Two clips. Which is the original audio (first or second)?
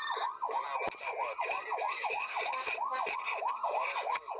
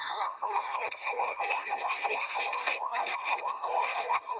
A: first